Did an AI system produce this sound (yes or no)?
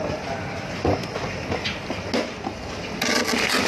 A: no